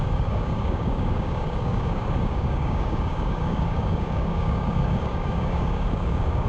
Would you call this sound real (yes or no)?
no